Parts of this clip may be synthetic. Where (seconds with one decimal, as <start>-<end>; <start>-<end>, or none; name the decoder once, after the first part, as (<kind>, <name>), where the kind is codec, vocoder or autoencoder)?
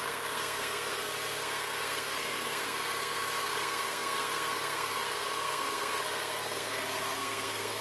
0.0-7.8 (codec, SNAC)